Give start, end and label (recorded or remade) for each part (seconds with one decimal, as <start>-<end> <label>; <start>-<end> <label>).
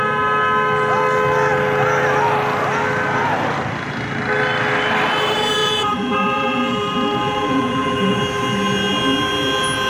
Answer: 0.0-5.6 recorded; 5.6-8.2 remade; 8.2-9.9 recorded